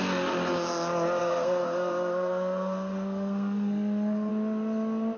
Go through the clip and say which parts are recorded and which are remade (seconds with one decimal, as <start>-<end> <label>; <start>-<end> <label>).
0.0-1.2 recorded; 1.2-4.3 remade; 4.3-5.2 recorded